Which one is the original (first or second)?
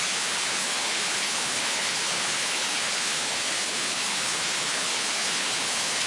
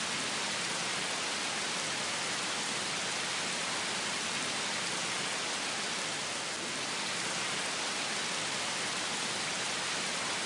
second